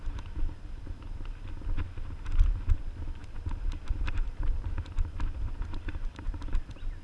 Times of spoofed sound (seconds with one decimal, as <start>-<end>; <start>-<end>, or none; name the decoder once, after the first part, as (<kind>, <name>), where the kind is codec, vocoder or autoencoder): 3.2-6.6 (vocoder, BigVGAN v2)